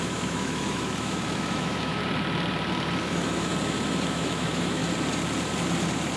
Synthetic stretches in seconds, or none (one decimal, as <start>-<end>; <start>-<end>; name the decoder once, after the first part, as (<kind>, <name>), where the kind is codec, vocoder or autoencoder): 0.0-2.0 (autoencoder, DAC-VAE); 3.0-3.5; 4.1-4.8